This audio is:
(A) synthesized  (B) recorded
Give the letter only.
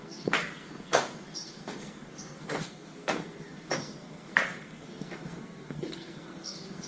A